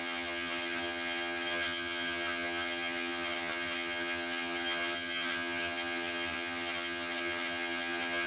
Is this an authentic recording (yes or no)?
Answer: no